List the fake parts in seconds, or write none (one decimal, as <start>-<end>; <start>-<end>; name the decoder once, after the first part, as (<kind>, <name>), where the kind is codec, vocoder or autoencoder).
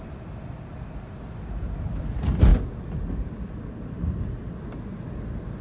none